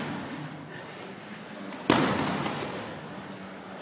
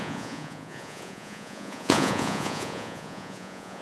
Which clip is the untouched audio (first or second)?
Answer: first